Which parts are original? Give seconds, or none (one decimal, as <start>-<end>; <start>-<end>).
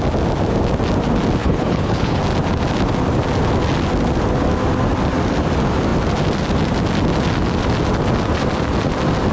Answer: 0.0-1.4; 2.2-9.3